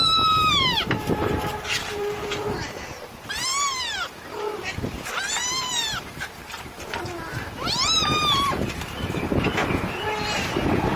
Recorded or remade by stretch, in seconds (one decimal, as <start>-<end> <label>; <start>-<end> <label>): 0.0-9.6 remade; 9.6-10.3 recorded; 10.3-11.0 remade